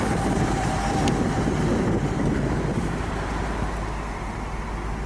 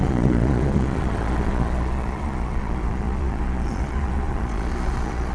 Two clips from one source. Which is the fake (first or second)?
second